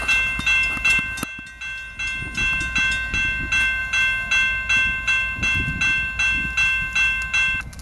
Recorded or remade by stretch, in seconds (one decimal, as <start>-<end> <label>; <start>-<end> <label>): 0.0-7.8 recorded